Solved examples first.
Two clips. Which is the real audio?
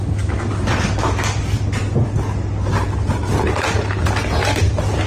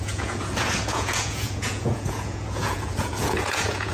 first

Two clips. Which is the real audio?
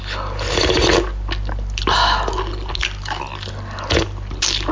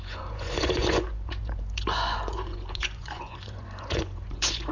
first